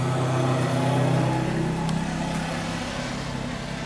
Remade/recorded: recorded